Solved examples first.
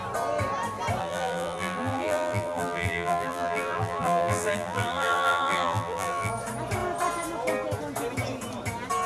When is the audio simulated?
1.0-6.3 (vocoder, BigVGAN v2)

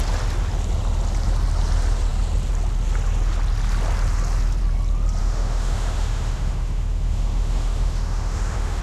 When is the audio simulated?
5.2-8.8 (autoencoder, DAC-VAE)

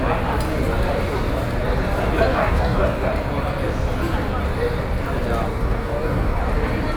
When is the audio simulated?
2.3-3.1 (codec, DAC); 5.5-6.4

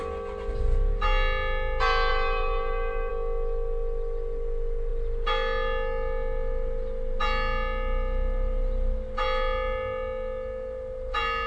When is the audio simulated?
2.1-3.1 (vocoder, BigVGAN v2)